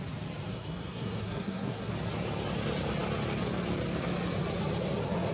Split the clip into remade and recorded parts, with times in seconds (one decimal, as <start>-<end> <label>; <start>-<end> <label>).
0.0-0.5 recorded; 0.5-1.9 remade; 1.9-5.3 recorded